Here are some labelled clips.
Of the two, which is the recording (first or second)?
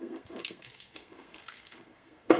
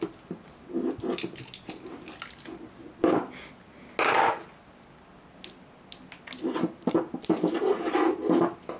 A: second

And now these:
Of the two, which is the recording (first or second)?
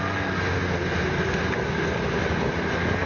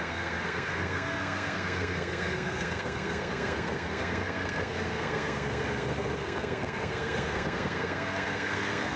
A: first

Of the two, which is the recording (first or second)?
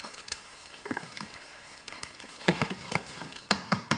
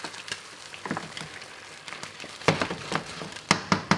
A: second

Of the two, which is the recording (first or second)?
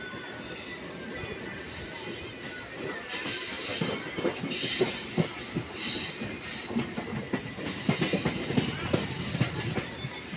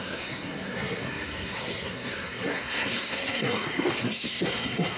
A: first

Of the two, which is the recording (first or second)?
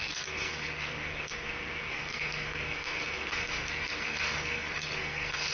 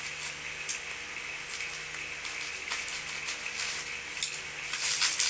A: second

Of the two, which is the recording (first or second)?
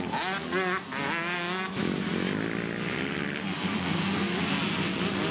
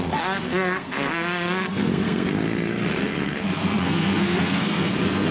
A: first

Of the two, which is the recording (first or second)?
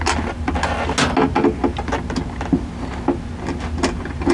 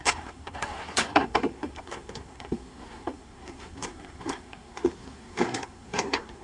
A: first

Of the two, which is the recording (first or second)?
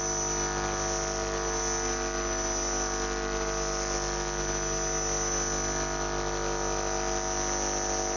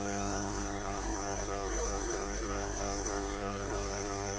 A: first